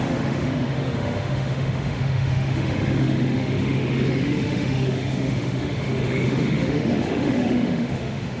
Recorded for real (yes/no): no